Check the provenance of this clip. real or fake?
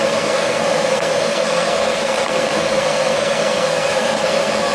fake